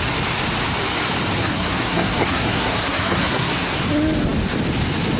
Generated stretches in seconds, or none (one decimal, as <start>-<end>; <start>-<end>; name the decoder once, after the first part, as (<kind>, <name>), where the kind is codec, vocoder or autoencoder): 1.4-3.8 (codec, SNAC)